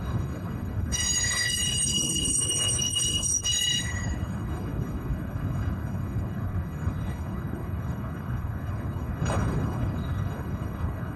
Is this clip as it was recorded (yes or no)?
no